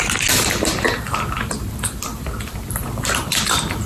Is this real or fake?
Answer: real